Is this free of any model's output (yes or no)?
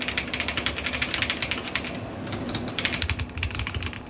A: yes